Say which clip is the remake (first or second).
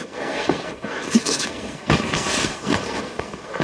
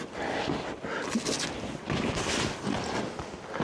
first